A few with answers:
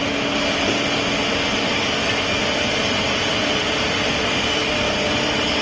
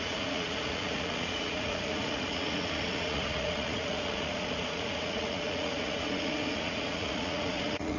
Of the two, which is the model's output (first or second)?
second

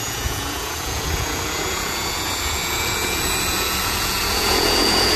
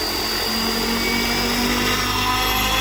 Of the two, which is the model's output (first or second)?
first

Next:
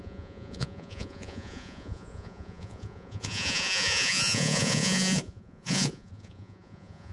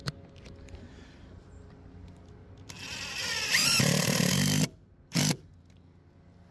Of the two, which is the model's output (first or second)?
first